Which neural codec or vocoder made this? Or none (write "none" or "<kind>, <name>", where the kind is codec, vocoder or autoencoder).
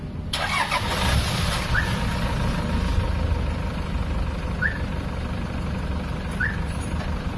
none